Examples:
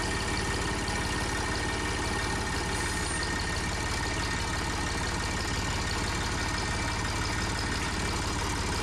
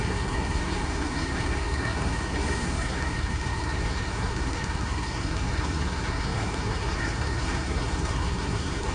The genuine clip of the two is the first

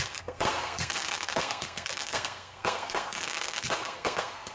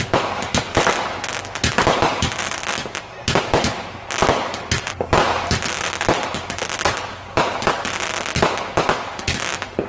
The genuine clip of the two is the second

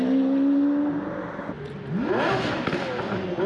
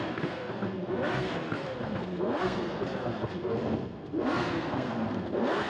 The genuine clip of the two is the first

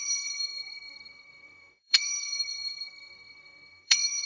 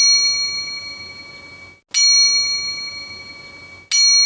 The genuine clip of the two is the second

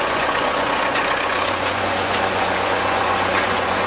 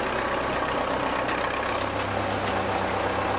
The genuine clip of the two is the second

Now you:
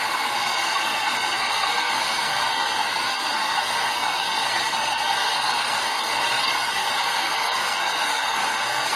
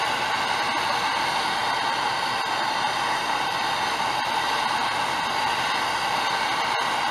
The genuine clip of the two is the second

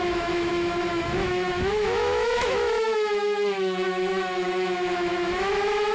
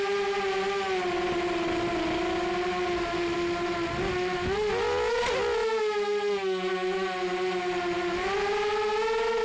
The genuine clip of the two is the second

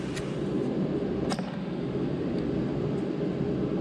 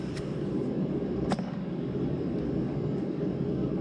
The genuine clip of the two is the first